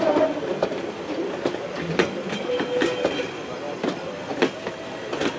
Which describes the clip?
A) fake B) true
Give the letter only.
B